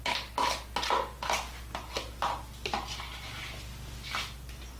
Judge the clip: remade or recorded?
recorded